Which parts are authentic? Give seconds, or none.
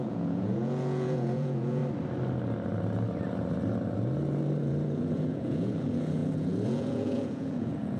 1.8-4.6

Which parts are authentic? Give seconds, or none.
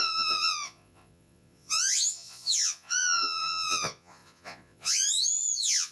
none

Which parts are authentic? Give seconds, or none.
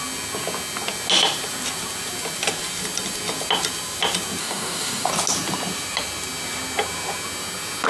0.0-4.4; 5.1-7.9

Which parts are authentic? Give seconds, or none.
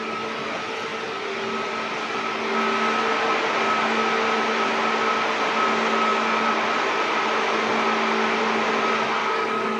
0.0-9.2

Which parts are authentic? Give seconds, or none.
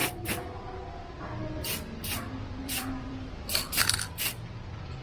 0.0-2.6; 3.6-5.0